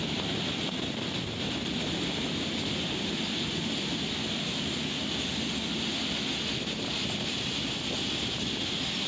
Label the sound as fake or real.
real